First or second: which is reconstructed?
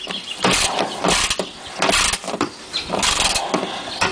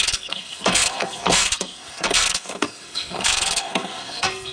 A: second